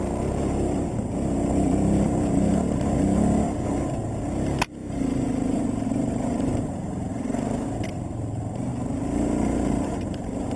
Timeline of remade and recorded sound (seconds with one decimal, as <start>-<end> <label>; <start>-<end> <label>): 0.0-4.8 recorded; 4.8-6.7 remade; 6.7-10.6 recorded